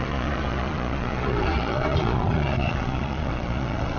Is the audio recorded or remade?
remade